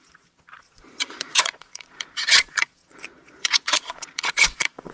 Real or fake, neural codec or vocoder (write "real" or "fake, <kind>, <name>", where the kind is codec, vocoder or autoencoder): fake, vocoder, Vocos